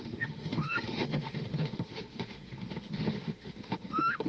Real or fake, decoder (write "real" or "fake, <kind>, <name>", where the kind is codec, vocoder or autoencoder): fake, autoencoder, DAC-VAE